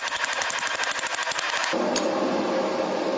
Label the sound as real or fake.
real